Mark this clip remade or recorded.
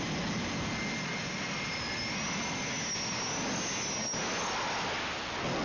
recorded